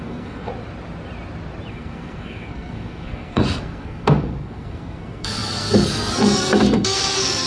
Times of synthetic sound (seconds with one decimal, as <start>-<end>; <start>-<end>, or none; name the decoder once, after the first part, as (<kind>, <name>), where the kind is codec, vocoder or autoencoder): 0.0-0.5 (codec, SNAC); 1.7-7.5